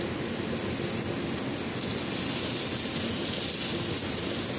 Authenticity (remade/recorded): recorded